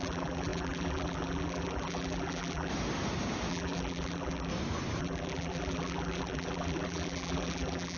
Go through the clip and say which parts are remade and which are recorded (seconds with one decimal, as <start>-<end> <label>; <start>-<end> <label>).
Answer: 0.0-2.7 remade; 2.7-3.5 recorded; 3.5-4.5 remade; 4.5-5.0 recorded; 5.0-8.0 remade